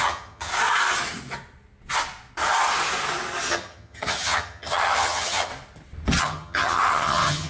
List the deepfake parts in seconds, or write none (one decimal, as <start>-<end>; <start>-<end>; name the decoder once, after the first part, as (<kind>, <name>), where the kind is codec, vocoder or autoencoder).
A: 0.0-0.5 (vocoder, HiFi-GAN); 3.5-5.5; 6.2-7.5

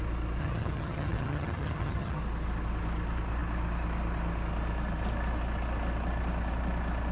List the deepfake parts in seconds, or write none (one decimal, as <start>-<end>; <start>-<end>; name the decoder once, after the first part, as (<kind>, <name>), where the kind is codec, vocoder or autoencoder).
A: 0.4-2.2 (vocoder, HiFi-GAN)

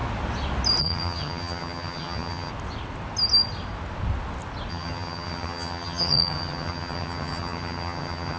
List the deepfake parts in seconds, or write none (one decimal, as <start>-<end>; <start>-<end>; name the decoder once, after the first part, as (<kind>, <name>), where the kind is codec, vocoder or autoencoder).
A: 0.8-2.5 (vocoder, HiFi-GAN); 4.7-8.4

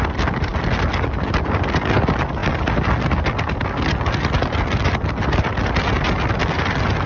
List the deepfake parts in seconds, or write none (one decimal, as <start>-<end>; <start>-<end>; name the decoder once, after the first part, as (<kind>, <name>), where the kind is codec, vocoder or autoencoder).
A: none

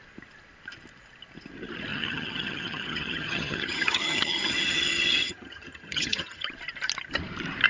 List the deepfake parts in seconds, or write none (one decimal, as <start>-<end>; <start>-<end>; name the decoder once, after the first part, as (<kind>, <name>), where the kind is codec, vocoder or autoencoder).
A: 1.9-6.5 (vocoder, HiFi-GAN)

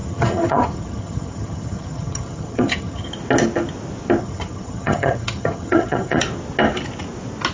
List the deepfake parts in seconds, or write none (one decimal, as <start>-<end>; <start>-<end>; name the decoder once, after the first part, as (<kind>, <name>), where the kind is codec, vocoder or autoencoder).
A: 0.0-3.1 (vocoder, HiFi-GAN); 4.2-6.2